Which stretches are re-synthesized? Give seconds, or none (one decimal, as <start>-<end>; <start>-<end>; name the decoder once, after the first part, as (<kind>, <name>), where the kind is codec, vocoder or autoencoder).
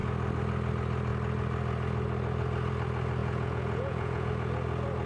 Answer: 3.2-4.3 (vocoder, Vocos)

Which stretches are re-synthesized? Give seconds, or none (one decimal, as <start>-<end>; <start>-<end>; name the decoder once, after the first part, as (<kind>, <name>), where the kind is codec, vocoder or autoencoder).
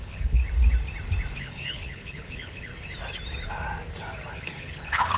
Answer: 0.0-0.4 (codec, HILCodec); 1.4-2.7; 4.3-5.2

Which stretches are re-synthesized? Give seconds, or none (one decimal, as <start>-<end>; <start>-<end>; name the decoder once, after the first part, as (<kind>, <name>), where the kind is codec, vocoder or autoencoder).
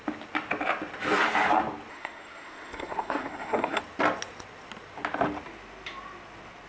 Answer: 1.9-3.8 (codec, SNAC)